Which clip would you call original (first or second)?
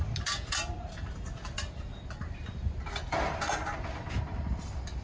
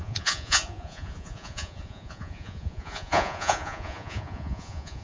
first